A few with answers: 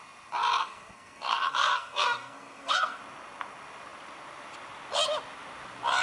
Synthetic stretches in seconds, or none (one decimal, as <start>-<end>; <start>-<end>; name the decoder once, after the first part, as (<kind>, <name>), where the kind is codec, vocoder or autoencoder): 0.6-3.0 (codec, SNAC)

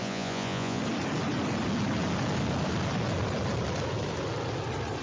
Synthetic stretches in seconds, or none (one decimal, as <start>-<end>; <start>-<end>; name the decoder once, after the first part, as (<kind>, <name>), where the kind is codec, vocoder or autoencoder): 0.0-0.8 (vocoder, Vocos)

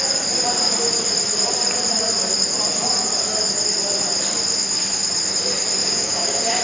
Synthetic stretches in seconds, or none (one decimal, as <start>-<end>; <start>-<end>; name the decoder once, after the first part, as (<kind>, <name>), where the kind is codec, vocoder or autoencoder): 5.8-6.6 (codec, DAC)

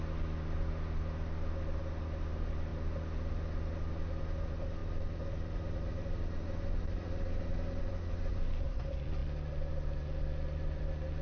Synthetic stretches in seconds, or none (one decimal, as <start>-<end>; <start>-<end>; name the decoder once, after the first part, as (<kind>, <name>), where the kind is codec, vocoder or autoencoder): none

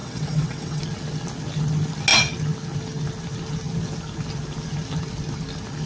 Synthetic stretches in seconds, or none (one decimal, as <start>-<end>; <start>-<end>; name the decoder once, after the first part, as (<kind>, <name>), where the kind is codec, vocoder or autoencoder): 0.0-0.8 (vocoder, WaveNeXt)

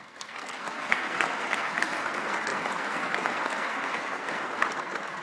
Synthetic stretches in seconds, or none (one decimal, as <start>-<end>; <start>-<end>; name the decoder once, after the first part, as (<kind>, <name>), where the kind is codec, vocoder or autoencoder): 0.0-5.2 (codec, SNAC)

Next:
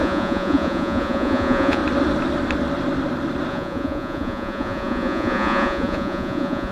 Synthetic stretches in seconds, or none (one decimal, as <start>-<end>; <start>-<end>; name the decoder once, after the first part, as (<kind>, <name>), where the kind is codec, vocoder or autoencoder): 0.0-1.8 (vocoder, Vocos); 3.5-6.7

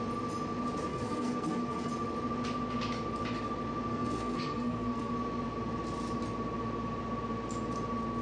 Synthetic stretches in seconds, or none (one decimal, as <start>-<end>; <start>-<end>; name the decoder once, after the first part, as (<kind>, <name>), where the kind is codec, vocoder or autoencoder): 0.9-1.9 (codec, SNAC); 3.9-5.1